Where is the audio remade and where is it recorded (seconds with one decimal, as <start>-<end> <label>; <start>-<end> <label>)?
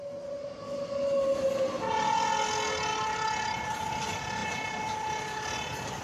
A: 0.0-2.9 recorded; 2.9-4.0 remade; 4.0-4.4 recorded; 4.4-5.1 remade; 5.1-6.0 recorded